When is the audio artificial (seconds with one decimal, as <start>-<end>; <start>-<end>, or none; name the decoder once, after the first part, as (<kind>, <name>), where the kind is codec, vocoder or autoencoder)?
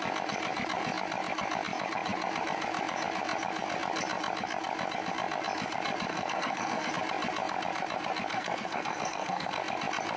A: 6.1-6.9 (codec, SNAC); 8.3-9.6